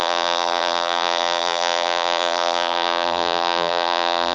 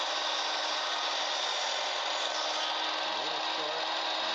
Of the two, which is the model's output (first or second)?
first